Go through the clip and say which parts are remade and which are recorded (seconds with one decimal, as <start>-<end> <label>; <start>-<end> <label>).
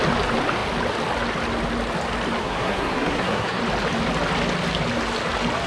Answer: 0.0-2.4 recorded; 2.4-3.6 remade; 3.6-5.7 recorded